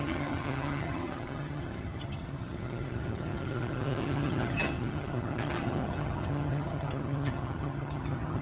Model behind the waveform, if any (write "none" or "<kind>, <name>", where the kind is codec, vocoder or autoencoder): vocoder, HiFi-GAN